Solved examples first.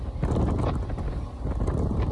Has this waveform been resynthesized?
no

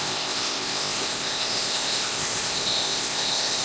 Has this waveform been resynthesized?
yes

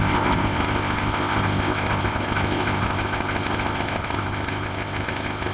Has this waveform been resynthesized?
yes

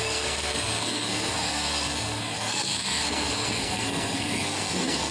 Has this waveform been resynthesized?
yes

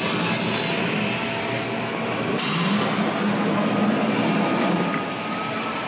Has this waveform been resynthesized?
no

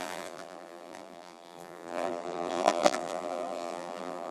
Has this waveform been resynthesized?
yes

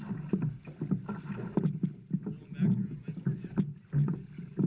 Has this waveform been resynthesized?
no